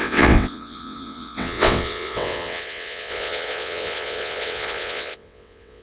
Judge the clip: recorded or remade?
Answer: remade